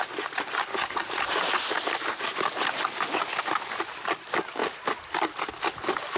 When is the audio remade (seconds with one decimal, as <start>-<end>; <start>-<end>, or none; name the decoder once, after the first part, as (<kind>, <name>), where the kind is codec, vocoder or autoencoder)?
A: 0.7-1.5 (vocoder, Vocos)